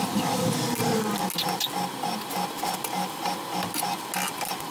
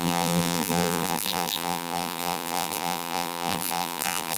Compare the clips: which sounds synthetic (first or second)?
second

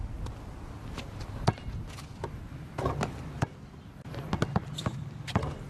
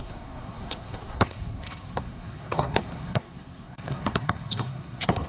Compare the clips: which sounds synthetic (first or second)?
second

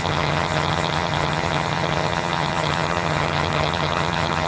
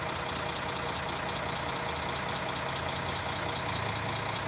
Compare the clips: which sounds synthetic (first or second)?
first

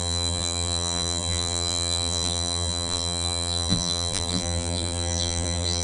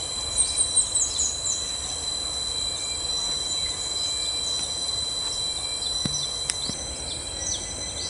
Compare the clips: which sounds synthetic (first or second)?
first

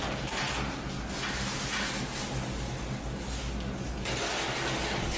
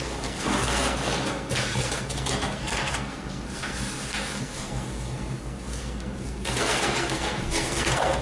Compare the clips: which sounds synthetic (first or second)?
second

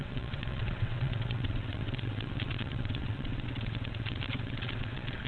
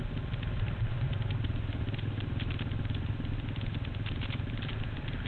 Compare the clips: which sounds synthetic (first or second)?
first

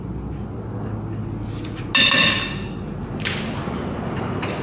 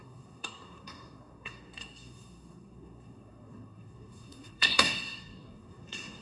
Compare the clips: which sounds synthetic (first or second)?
second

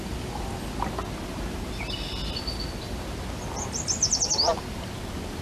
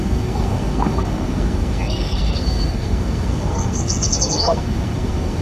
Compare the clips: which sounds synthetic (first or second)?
second